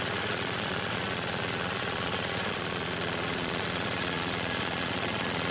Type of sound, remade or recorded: remade